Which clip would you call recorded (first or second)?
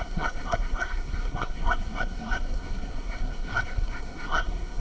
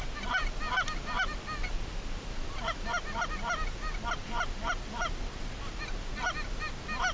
second